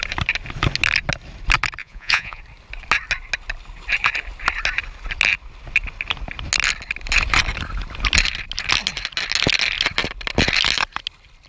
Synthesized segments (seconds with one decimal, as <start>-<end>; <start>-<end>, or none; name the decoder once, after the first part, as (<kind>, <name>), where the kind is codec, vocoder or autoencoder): 1.8-2.4 (vocoder, Vocos)